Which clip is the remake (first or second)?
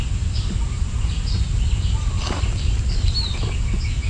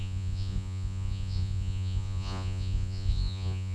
second